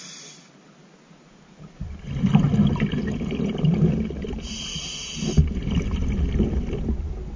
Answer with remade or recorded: recorded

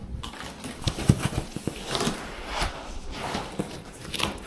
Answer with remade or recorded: recorded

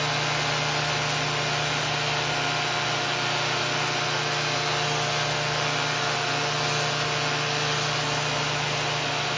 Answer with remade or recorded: recorded